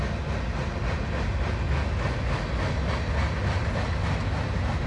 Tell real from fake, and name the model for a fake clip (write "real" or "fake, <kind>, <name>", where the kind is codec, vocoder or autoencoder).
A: real